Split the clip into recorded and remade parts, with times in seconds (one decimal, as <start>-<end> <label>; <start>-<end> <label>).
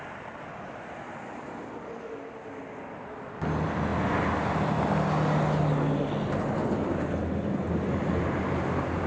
0.0-9.1 recorded